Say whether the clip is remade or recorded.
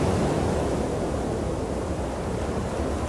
recorded